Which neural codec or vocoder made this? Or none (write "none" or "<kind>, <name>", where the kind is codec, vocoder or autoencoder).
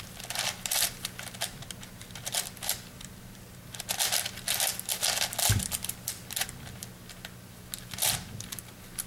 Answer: none